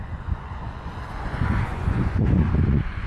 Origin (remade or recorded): remade